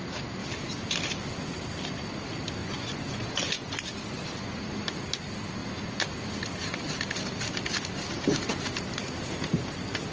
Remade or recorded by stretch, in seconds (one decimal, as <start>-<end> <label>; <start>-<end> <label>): 0.0-2.6 recorded; 2.6-3.8 remade; 3.8-10.1 recorded